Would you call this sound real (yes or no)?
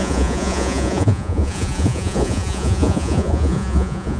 no